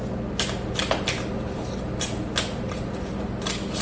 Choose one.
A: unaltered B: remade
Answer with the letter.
A